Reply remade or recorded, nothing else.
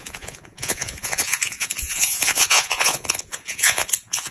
remade